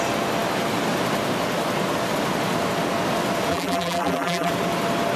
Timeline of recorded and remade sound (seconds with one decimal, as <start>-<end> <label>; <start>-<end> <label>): 0.0-3.5 recorded; 3.5-4.5 remade; 4.5-5.2 recorded